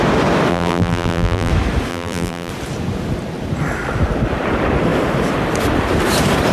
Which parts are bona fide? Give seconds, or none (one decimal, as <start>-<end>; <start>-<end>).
0.0-0.5; 1.5-1.9; 2.5-6.5